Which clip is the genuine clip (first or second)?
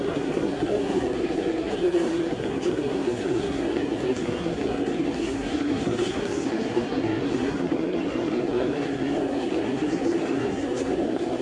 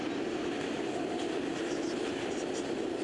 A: second